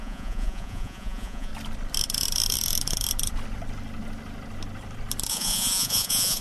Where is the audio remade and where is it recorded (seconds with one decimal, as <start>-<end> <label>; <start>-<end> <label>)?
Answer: 0.0-1.5 remade; 1.5-5.3 recorded; 5.3-6.4 remade